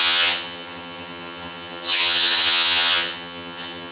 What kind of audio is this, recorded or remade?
remade